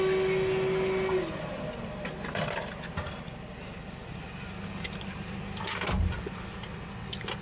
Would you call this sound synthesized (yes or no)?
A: no